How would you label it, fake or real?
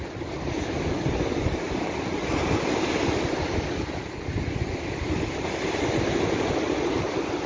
real